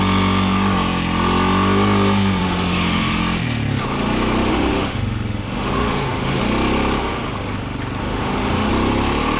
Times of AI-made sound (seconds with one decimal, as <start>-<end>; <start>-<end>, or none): 2.4-3.2; 4.5-6.4; 7.0-7.5; 8.0-8.7